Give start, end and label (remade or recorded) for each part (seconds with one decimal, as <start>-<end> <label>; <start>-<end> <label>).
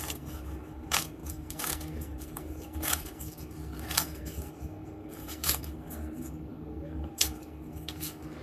0.0-8.4 remade